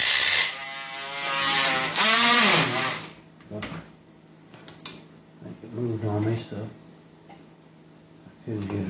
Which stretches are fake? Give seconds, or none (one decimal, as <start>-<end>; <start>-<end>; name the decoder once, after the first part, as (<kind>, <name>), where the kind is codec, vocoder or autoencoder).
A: none